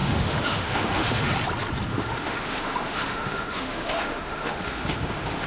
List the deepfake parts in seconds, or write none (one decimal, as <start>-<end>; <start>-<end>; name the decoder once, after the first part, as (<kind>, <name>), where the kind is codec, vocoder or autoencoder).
0.0-1.3 (autoencoder, DAC-VAE); 1.9-5.5